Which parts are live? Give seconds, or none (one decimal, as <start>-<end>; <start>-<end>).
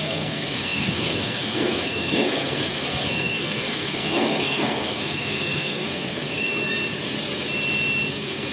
6.5-8.1